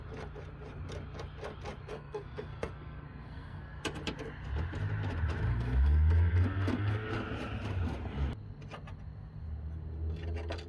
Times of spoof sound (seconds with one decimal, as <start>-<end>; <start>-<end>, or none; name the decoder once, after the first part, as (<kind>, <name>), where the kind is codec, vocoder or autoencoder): 1.9-3.8 (codec, SNAC); 5.5-7.1